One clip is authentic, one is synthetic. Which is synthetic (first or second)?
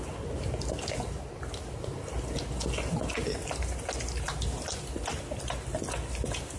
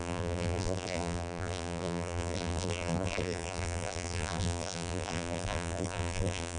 second